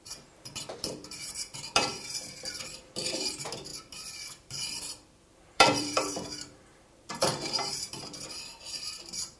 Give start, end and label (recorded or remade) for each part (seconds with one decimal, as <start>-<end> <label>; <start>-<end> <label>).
0.0-9.4 remade